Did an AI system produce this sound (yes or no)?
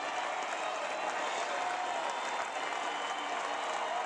no